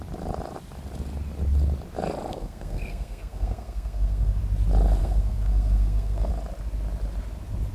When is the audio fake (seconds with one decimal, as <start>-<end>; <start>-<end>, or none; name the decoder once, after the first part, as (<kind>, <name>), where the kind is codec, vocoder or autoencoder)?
2.3-4.4 (codec, SNAC); 5.0-6.3